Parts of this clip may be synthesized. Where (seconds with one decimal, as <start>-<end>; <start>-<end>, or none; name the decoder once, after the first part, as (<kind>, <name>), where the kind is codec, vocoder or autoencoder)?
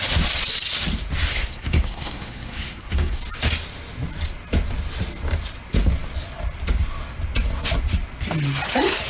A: 1.3-3.2 (codec, SNAC)